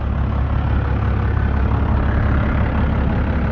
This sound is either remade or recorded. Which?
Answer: recorded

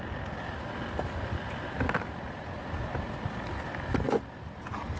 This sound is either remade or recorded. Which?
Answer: recorded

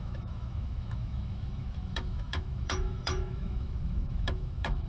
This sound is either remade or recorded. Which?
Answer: remade